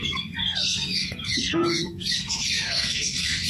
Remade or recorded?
remade